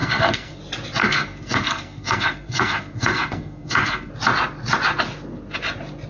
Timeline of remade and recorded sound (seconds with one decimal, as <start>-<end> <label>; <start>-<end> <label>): 0.0-0.6 remade; 0.6-1.0 recorded; 1.0-4.1 remade; 4.1-6.1 recorded